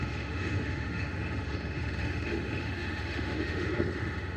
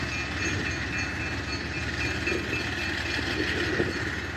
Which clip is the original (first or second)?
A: second